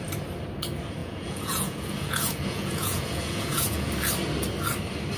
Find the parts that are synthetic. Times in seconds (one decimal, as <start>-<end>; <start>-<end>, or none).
1.0-3.9